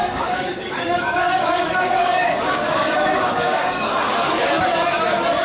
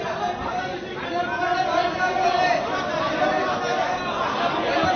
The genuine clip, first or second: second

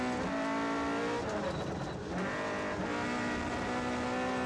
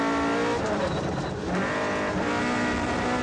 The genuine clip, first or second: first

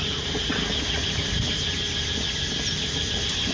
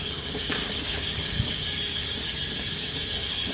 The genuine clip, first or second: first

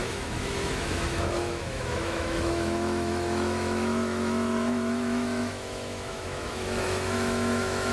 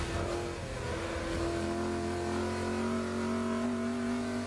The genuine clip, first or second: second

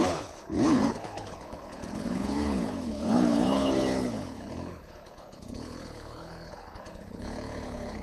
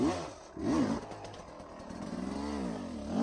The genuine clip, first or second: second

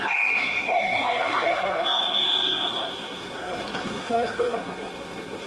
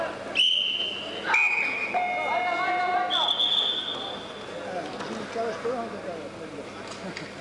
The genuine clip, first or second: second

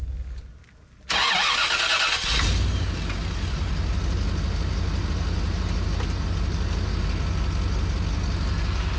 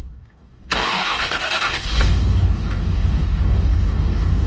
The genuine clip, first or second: first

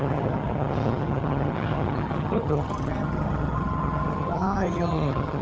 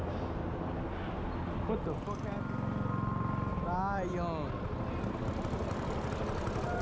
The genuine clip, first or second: second